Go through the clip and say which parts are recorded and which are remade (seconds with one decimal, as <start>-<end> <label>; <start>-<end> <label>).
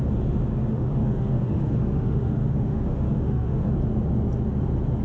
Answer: 0.0-0.7 recorded; 0.7-3.7 remade; 3.7-5.0 recorded